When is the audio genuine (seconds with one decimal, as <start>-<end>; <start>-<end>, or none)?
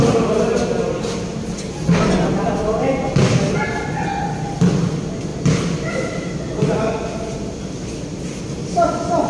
0.0-9.3